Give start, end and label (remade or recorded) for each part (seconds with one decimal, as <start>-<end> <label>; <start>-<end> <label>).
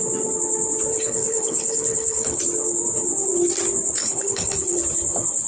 0.0-0.9 recorded; 0.9-2.4 remade; 2.4-4.0 recorded; 4.0-4.8 remade; 4.8-5.5 recorded